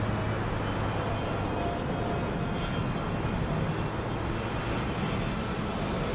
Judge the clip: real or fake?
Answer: real